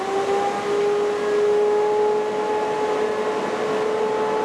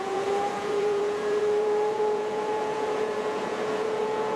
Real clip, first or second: first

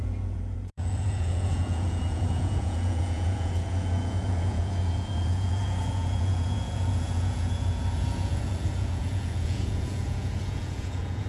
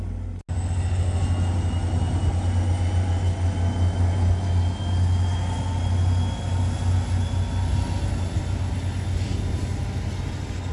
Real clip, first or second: second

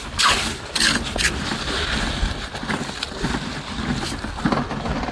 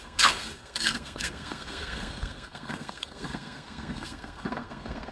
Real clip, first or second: first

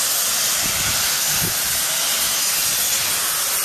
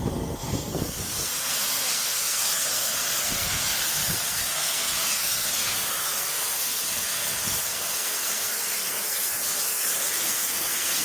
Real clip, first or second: first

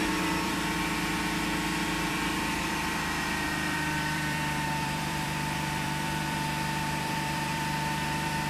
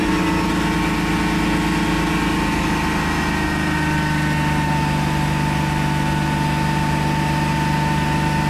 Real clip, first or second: second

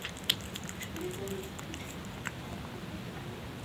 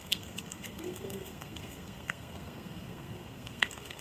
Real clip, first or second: first